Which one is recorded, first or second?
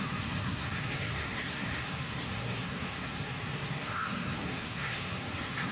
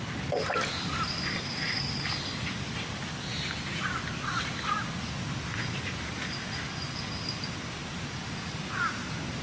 second